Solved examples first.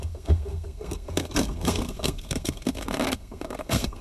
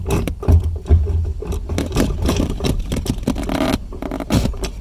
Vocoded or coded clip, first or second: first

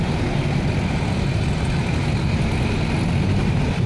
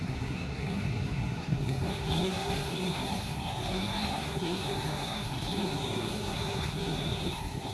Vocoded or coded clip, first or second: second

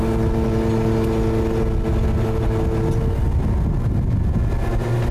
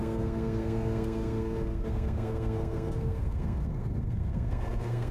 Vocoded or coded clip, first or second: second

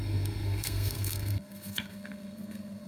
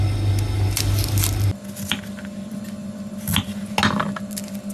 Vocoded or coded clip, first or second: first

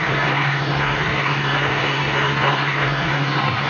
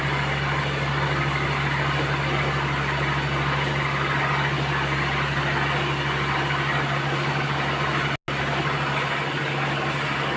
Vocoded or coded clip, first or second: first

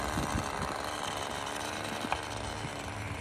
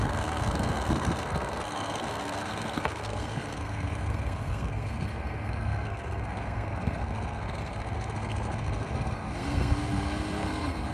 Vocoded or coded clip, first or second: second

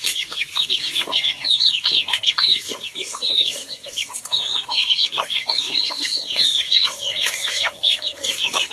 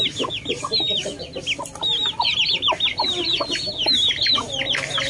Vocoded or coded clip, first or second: first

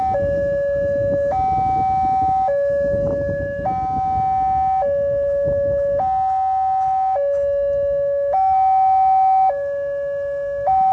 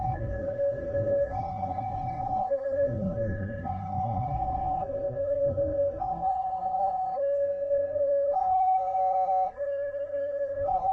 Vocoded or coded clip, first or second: second